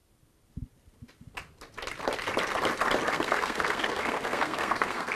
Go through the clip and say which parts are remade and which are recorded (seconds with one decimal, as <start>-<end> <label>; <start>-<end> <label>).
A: 0.0-3.1 recorded; 3.1-5.2 remade